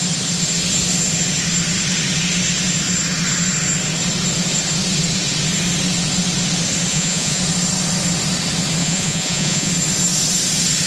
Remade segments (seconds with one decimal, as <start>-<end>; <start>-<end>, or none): 6.9-7.4; 8.8-9.7

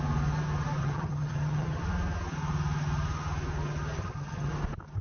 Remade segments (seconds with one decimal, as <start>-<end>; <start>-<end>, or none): 0.8-1.8; 4.0-4.5

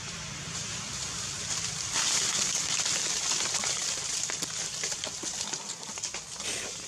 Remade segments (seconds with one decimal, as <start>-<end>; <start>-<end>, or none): none

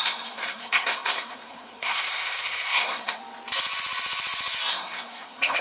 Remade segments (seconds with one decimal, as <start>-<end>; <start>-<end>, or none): 0.0-3.2; 4.7-5.6

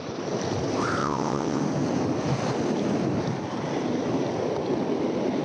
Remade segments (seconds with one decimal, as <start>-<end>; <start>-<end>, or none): 1.0-1.6

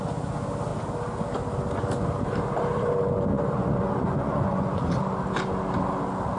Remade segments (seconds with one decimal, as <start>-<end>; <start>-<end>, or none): 3.3-4.9

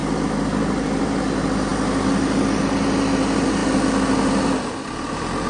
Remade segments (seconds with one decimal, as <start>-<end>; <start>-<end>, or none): none

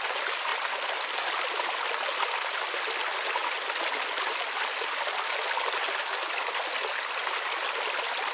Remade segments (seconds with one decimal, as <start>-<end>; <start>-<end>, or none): none